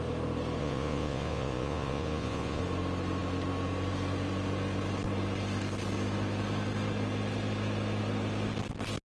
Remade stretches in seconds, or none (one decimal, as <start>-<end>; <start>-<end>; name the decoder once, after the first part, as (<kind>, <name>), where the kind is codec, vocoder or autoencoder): 0.6-2.6 (vocoder, Vocos)